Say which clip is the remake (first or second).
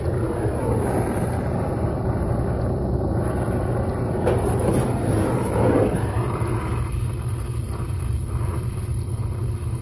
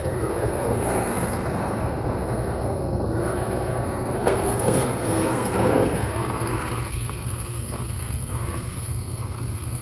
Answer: second